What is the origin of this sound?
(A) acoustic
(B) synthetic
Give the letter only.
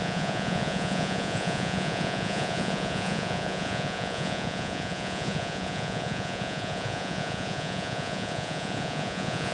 B